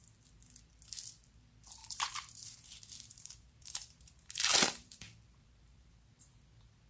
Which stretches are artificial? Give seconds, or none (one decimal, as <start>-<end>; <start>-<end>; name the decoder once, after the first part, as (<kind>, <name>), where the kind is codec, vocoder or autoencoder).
1.8-5.9 (vocoder, BigVGAN v2)